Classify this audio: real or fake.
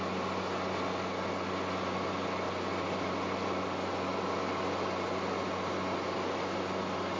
real